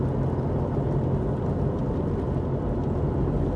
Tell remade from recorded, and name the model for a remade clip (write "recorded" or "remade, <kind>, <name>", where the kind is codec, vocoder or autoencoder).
recorded